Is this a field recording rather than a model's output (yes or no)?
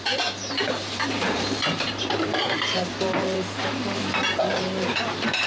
no